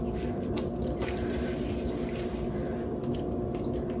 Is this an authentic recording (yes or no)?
yes